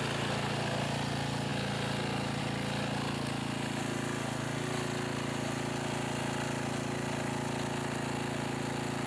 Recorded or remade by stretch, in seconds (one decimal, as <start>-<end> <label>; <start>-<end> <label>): 0.0-9.1 recorded